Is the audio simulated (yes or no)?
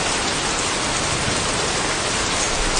no